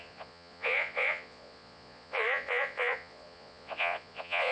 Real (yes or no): no